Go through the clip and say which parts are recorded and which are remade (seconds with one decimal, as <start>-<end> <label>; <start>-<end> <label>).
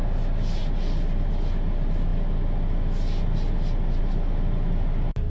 0.0-5.3 recorded